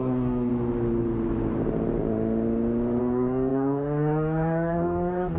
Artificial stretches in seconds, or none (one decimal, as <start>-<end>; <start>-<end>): 0.0-0.5; 3.0-5.4